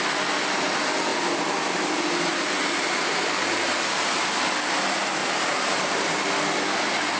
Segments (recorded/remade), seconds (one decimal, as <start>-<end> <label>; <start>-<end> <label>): 0.0-1.1 recorded; 1.1-3.7 remade; 3.7-5.2 recorded; 5.2-6.3 remade; 6.3-7.2 recorded